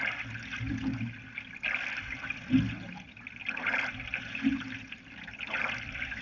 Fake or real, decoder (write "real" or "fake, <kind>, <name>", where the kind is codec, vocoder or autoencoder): real